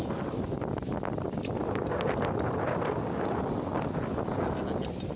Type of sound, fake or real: real